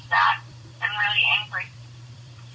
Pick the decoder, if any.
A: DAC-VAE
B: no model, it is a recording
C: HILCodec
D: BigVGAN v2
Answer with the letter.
D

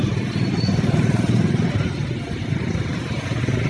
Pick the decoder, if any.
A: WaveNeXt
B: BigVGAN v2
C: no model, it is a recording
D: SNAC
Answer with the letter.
C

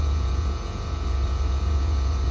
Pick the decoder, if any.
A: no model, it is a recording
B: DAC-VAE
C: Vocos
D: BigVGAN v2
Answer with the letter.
C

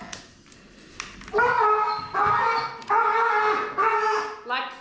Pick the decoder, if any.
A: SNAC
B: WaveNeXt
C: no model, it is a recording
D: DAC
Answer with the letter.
C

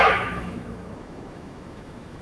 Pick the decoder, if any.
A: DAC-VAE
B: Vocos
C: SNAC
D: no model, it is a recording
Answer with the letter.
A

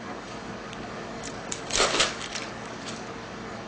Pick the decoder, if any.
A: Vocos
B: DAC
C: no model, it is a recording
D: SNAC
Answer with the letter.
B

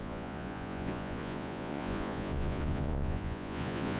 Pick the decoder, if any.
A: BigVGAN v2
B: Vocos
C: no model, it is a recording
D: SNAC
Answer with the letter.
B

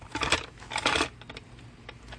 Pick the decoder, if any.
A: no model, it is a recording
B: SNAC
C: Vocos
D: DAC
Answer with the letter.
A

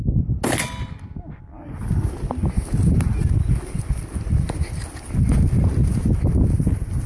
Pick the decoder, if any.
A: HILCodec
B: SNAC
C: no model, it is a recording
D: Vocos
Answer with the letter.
C